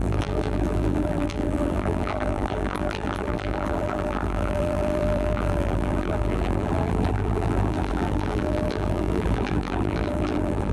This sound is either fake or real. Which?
fake